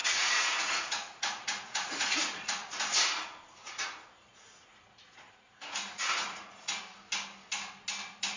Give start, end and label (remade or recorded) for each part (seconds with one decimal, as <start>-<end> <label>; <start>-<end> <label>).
0.0-2.8 remade; 2.8-3.6 recorded; 3.6-6.8 remade; 6.8-8.4 recorded